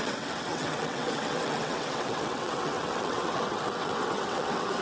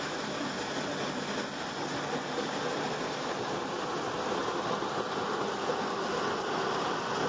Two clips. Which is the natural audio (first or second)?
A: second